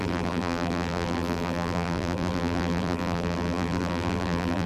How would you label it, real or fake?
fake